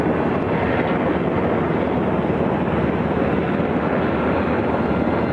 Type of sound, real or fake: real